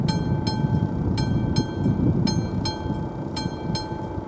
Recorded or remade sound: recorded